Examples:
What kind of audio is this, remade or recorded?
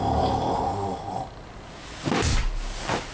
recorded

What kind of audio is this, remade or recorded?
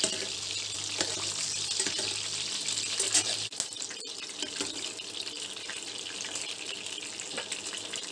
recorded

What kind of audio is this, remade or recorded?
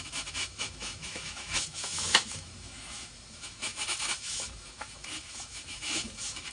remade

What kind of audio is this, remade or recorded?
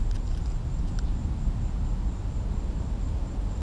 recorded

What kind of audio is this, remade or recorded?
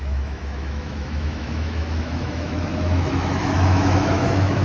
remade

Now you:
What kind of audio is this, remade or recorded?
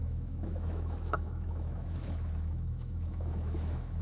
remade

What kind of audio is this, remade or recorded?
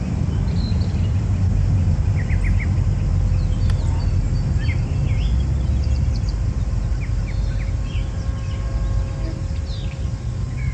recorded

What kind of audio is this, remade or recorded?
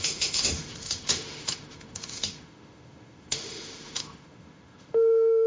remade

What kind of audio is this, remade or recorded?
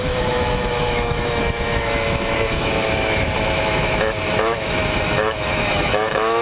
remade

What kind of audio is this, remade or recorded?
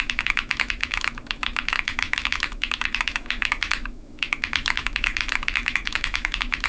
remade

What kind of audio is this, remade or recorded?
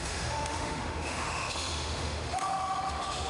remade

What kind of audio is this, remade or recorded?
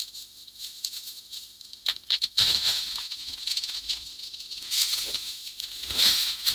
remade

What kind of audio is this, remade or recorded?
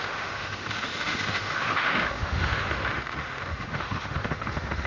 remade